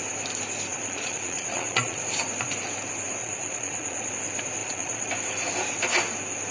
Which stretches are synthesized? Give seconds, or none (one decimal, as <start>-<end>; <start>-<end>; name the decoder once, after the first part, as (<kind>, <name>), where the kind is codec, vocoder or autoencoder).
0.7-2.0 (vocoder, Vocos); 3.2-4.1; 4.6-5.1